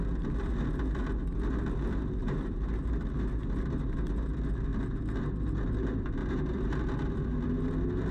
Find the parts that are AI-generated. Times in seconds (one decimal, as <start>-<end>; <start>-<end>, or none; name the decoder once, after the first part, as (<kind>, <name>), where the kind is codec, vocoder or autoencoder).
2.2-3.0 (vocoder, BigVGAN v2); 6.2-6.8